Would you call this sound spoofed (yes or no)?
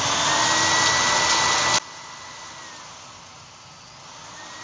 no